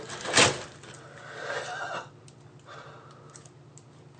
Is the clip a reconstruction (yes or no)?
no